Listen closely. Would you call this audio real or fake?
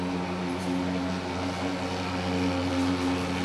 real